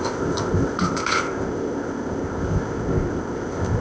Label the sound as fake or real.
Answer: fake